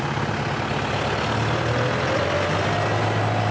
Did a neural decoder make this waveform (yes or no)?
no